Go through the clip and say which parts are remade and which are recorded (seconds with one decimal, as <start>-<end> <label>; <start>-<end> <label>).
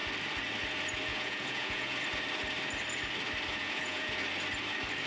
0.0-1.1 recorded; 1.1-2.0 remade; 2.0-3.6 recorded; 3.6-4.1 remade; 4.1-5.1 recorded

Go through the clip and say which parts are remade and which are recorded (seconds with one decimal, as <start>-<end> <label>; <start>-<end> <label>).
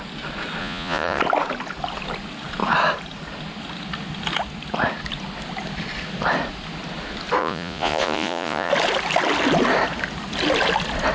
0.0-0.6 recorded; 0.6-1.2 remade; 1.2-7.4 recorded; 7.4-8.7 remade; 8.7-11.1 recorded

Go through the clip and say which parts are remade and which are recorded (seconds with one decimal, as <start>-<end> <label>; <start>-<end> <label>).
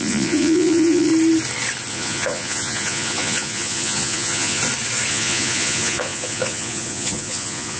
0.0-1.1 remade; 1.1-1.9 recorded; 1.9-4.6 remade; 4.6-5.1 recorded; 5.1-7.8 remade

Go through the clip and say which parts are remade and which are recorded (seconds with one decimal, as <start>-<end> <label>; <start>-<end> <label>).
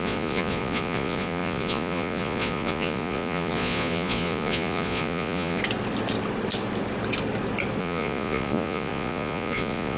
0.0-5.6 remade; 5.6-7.8 recorded; 7.8-10.0 remade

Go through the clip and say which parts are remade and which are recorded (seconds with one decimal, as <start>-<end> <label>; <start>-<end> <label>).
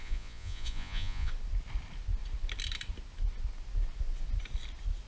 0.0-1.3 remade; 1.3-5.1 recorded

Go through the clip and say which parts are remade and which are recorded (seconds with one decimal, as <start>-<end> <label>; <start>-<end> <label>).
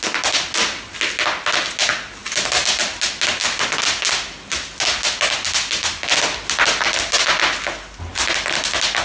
0.0-9.0 recorded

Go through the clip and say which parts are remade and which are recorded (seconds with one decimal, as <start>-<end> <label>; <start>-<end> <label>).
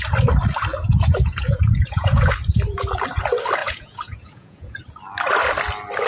0.0-0.8 recorded; 0.8-2.3 remade; 2.3-3.6 recorded; 3.6-4.8 remade; 4.8-6.1 recorded